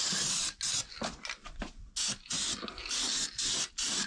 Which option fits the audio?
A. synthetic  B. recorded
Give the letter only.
B